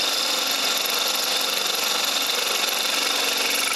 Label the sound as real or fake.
real